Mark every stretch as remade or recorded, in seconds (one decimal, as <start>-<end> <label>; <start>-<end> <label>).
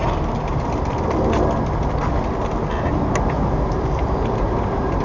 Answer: 0.0-5.0 recorded